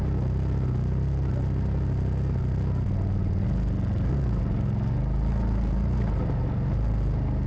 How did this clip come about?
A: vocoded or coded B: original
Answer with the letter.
B